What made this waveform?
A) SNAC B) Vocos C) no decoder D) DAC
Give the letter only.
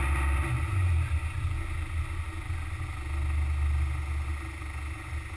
C